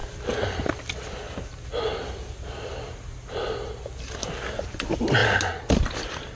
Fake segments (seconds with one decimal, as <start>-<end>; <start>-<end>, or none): none